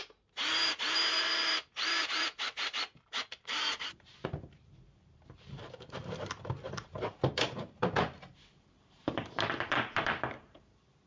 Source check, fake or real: fake